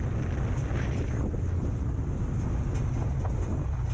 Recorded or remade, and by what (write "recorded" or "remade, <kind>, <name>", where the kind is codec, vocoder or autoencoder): recorded